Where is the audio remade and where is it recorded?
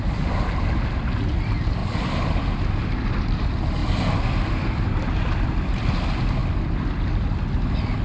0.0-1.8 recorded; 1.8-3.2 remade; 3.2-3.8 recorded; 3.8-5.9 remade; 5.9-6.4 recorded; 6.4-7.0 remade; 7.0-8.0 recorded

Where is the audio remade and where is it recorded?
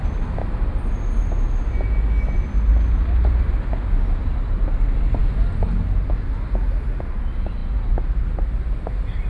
0.0-0.4 recorded; 0.4-1.2 remade; 1.2-9.3 recorded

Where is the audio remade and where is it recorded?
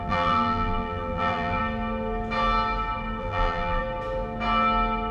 0.0-1.6 remade; 1.6-3.2 recorded; 3.2-3.8 remade; 3.8-5.1 recorded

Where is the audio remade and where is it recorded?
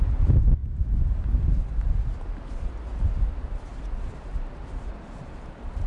0.0-5.9 recorded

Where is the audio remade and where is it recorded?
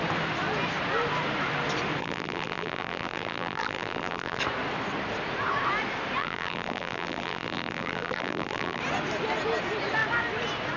0.0-2.0 recorded; 2.0-4.4 remade; 4.4-6.2 recorded; 6.2-8.8 remade; 8.8-10.8 recorded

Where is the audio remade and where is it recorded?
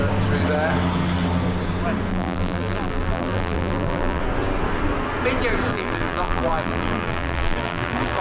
0.0-2.1 recorded; 2.1-4.2 remade; 4.2-5.7 recorded; 5.7-8.2 remade